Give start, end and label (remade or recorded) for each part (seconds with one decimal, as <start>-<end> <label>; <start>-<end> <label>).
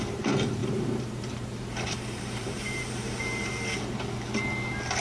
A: 0.0-0.6 recorded; 0.6-3.6 remade; 3.6-5.0 recorded